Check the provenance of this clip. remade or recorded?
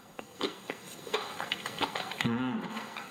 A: remade